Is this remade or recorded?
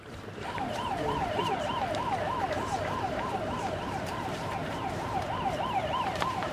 remade